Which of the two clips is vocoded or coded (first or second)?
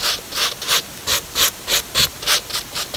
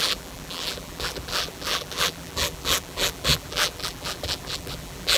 second